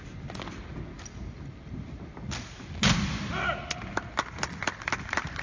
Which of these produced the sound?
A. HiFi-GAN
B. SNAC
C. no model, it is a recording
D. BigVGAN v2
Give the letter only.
C